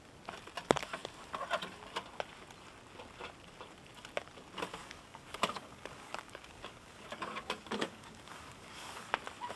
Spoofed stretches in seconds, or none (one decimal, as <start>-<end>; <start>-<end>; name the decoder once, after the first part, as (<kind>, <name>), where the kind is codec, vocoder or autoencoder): 4.8-9.1 (codec, DAC)

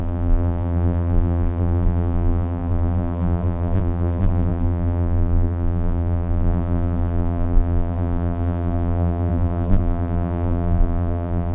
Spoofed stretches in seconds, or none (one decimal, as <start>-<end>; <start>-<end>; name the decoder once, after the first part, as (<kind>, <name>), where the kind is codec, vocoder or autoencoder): 0.0-11.5 (vocoder, BigVGAN v2)